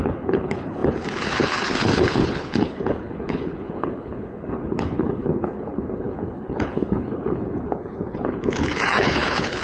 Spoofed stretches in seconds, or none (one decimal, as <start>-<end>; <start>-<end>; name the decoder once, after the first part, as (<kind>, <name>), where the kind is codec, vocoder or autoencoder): 0.0-9.6 (codec, HILCodec)

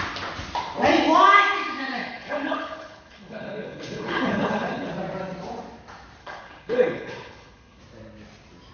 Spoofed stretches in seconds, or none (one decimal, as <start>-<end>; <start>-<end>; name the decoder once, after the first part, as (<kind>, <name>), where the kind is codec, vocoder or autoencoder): 2.0-4.9 (codec, HILCodec); 6.2-7.8

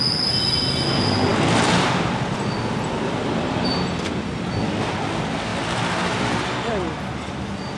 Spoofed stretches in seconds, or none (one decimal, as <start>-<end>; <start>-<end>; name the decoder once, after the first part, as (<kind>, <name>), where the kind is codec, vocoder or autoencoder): none

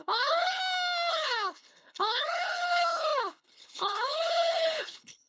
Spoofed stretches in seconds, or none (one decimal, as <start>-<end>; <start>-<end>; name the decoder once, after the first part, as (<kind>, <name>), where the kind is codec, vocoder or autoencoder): 0.0-0.6 (codec, HILCodec); 1.1-5.3

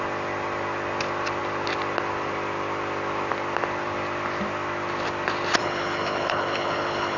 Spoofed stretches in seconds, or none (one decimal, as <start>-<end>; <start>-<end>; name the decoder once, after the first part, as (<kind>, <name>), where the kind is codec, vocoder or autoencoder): 5.6-7.2 (codec, HILCodec)

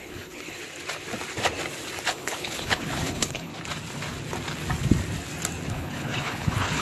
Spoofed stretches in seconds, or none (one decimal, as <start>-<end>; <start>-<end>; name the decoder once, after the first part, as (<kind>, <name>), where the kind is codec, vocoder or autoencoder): 0.0-0.6 (codec, HILCodec); 2.1-3.5; 5.7-6.8